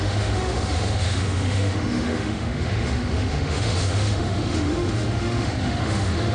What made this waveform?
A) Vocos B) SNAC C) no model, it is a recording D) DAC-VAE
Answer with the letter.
D